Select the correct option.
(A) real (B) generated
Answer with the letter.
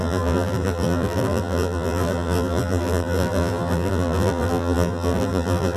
B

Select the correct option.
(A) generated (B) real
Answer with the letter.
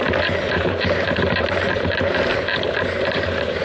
A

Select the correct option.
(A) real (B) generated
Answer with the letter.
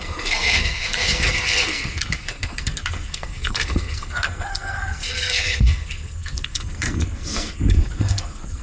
B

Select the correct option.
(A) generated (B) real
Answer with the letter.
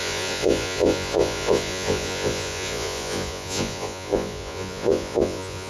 A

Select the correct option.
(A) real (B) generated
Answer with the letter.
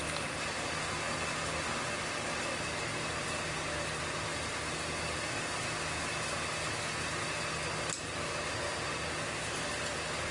A